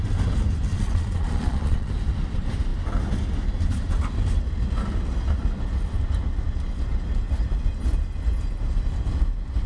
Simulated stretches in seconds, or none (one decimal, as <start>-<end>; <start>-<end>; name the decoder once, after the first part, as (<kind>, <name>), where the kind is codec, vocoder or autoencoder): 0.7-1.9 (vocoder, Vocos)